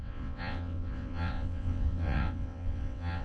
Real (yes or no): no